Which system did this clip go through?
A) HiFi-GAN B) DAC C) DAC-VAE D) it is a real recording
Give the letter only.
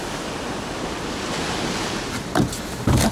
D